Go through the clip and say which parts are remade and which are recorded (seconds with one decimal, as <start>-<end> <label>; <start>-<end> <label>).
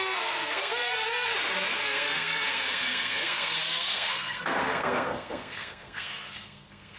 0.0-1.3 remade; 1.3-1.8 recorded; 1.8-7.0 remade